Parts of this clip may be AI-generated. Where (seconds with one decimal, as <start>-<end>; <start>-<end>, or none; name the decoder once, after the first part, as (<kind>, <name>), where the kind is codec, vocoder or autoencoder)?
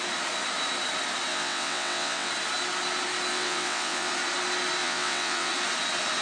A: 1.3-2.3 (vocoder, WaveNeXt); 3.3-4.1; 4.8-5.5